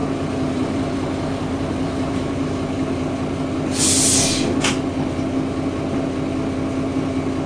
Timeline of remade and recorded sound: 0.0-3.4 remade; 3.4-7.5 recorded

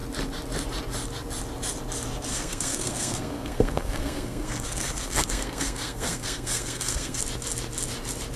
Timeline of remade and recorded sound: 0.0-2.3 recorded; 2.3-7.2 remade; 7.2-8.4 recorded

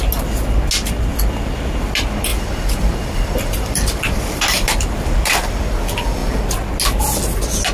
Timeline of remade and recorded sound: 0.0-2.3 recorded; 2.3-5.3 remade; 5.3-7.7 recorded